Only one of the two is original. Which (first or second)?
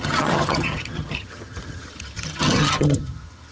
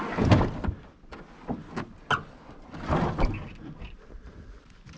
second